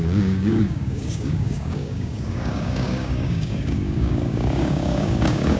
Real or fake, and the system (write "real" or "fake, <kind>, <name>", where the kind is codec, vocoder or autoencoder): fake, codec, DAC